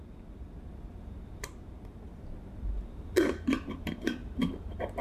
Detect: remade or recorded remade